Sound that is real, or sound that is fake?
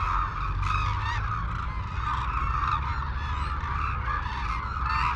real